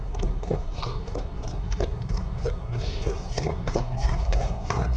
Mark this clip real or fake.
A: fake